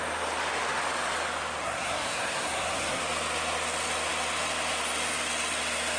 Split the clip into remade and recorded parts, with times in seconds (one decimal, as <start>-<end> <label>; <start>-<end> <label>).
0.0-1.6 recorded; 1.6-3.0 remade; 3.0-6.0 recorded